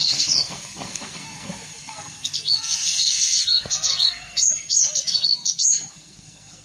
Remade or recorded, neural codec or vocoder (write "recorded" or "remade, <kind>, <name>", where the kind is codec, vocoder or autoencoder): remade, codec, SNAC